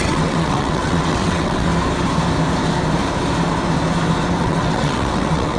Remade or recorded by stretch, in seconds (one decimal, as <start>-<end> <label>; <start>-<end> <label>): 0.0-1.7 remade; 1.7-4.4 recorded; 4.4-5.6 remade